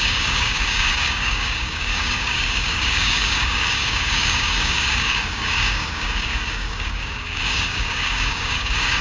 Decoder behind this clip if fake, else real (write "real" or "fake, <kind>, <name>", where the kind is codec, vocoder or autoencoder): fake, codec, DAC